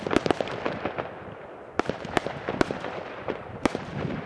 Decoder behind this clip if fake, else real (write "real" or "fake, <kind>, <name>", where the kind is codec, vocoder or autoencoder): fake, vocoder, BigVGAN v2